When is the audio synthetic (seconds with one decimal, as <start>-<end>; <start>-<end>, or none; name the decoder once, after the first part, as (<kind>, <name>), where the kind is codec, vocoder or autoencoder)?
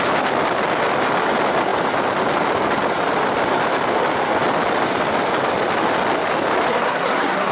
6.7-7.5 (codec, SNAC)